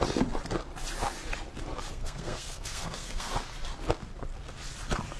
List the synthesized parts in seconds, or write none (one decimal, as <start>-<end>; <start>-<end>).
1.9-3.3